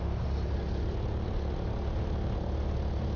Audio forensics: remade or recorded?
recorded